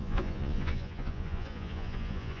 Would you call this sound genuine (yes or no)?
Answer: no